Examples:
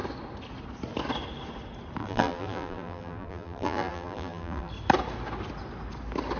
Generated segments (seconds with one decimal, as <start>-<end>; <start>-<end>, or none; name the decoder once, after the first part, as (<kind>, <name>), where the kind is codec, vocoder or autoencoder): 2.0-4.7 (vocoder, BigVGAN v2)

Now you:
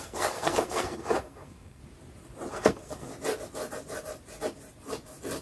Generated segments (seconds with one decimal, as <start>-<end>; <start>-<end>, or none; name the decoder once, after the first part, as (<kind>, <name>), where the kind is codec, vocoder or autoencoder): 0.0-1.8 (codec, SNAC); 2.5-3.1

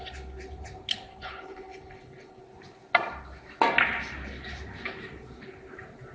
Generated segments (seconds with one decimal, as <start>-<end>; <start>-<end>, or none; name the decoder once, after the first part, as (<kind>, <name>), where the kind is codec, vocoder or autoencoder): 1.1-2.4 (codec, HILCodec)

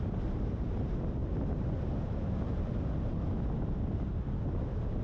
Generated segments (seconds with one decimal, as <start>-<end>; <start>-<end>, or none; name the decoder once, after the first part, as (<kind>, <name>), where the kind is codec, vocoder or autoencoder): none

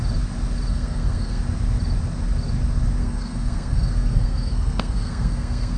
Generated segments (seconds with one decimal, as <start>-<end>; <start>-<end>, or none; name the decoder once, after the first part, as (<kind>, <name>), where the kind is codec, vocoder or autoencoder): 0.7-1.4 (codec, SNAC); 3.0-5.8